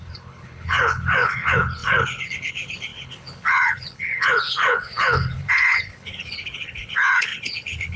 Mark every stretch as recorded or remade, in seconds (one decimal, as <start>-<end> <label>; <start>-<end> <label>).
0.0-8.0 remade